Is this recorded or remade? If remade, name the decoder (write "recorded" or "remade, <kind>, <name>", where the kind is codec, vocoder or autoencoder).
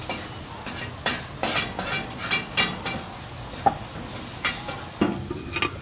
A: recorded